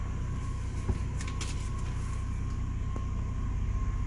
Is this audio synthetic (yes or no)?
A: no